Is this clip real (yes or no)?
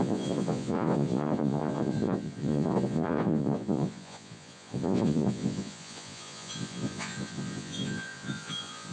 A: no